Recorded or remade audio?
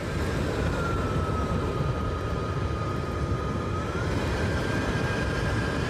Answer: remade